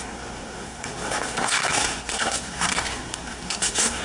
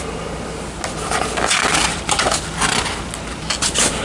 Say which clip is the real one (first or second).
second